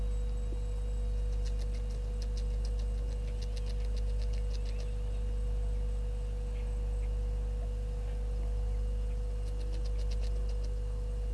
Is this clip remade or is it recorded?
recorded